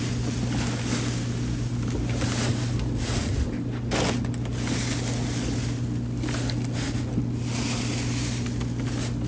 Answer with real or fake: real